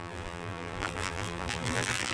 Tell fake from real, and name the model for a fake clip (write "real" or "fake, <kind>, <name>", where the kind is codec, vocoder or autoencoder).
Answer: fake, vocoder, BigVGAN v2